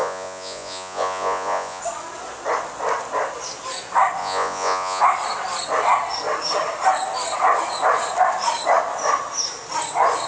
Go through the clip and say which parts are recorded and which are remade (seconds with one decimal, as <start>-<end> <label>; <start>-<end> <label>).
0.0-1.8 remade; 1.8-4.2 recorded; 4.2-5.0 remade; 5.0-10.3 recorded